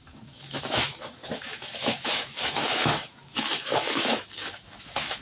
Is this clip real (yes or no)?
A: no